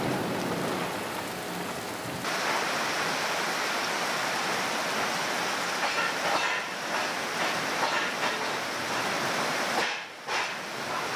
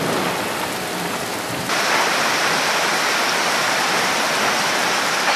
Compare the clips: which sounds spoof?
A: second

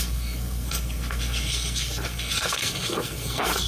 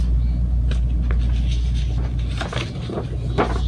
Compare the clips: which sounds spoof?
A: first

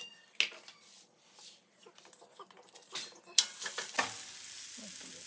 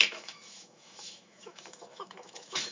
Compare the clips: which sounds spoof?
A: second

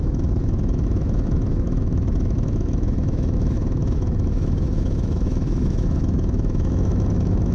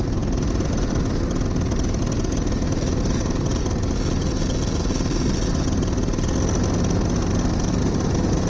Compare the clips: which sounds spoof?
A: first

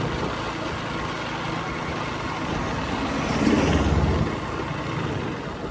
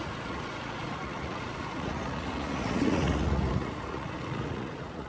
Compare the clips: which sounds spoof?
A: second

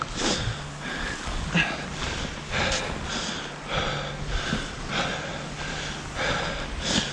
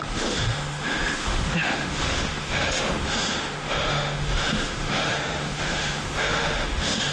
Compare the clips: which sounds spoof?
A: second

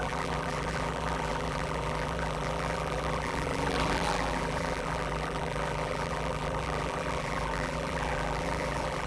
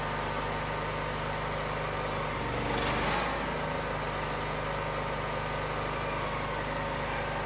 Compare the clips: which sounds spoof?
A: first